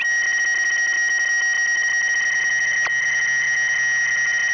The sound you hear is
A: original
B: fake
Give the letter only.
A